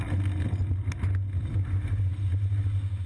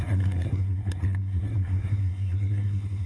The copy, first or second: second